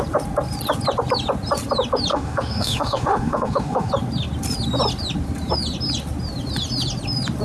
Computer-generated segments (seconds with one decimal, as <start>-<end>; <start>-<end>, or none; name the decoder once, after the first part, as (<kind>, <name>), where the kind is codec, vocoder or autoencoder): 2.1-3.9 (autoencoder, DAC-VAE)